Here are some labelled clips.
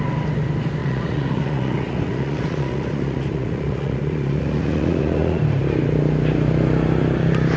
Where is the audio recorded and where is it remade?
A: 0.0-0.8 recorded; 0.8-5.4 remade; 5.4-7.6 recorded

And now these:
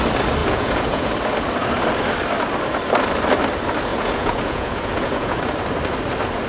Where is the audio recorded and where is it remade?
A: 0.0-0.4 recorded; 0.4-1.1 remade; 1.1-3.9 recorded; 3.9-5.4 remade; 5.4-6.5 recorded

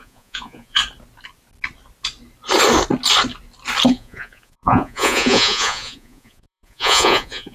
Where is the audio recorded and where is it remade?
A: 0.0-0.8 remade; 0.8-3.9 recorded; 3.9-7.5 remade

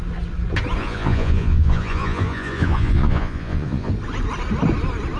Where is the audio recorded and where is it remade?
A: 0.0-0.8 recorded; 0.8-3.9 remade; 3.9-5.2 recorded

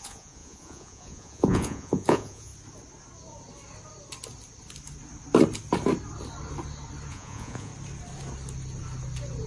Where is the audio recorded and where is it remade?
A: 0.0-2.5 remade; 2.5-7.1 recorded; 7.1-7.7 remade; 7.7-9.5 recorded

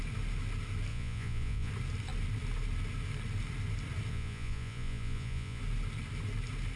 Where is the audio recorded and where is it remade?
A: 0.0-0.9 recorded; 0.9-1.7 remade; 1.7-4.1 recorded; 4.1-5.6 remade; 5.6-6.8 recorded

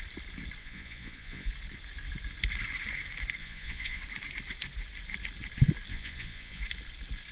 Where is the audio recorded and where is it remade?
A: 0.0-0.6 recorded; 0.6-1.5 remade; 1.5-3.4 recorded; 3.4-4.0 remade; 4.0-5.9 recorded; 5.9-6.6 remade; 6.6-7.3 recorded